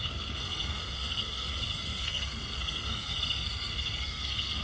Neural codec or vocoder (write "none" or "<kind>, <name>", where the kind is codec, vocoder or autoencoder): codec, SNAC